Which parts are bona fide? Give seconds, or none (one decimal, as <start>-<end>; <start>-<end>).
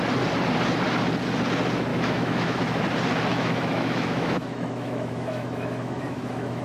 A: 0.0-1.9; 2.8-3.3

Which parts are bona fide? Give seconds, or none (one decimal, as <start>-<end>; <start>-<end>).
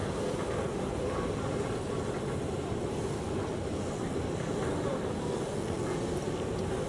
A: 3.5-6.9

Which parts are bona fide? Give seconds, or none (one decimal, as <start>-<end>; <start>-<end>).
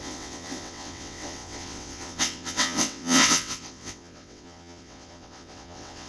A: none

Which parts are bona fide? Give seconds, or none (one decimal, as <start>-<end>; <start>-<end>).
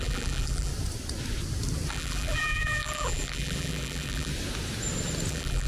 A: 0.7-1.9; 4.3-5.3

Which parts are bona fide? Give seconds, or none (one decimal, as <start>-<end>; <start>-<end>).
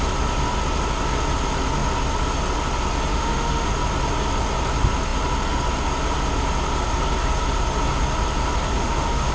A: 0.0-3.1; 3.7-8.8